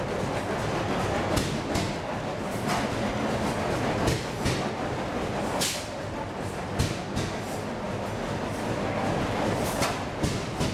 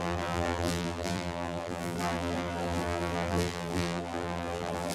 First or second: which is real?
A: first